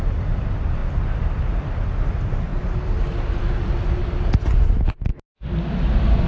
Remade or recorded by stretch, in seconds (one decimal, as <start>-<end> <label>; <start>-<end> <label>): 0.0-6.3 recorded

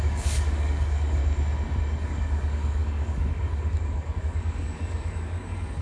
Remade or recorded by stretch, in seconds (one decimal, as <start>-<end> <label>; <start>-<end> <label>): 0.0-1.2 remade; 1.2-2.0 recorded; 2.0-5.8 remade